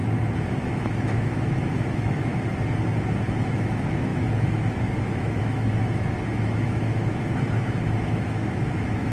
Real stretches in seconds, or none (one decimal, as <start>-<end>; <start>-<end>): 0.0-0.7; 2.3-3.4